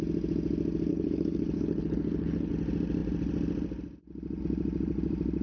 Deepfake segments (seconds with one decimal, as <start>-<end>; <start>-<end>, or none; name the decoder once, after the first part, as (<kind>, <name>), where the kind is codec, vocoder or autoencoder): 0.9-2.5 (codec, HILCodec)